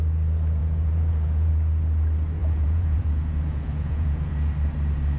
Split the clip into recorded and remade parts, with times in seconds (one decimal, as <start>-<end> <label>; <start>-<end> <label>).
0.0-0.6 recorded; 0.6-1.5 remade; 1.5-2.4 recorded; 2.4-4.3 remade; 4.3-5.2 recorded